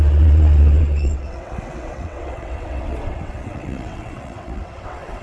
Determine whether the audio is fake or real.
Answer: fake